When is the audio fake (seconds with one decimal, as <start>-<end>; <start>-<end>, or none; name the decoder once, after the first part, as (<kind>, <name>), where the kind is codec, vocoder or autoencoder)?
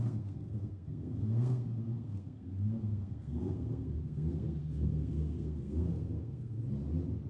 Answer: 0.0-6.6 (codec, SNAC)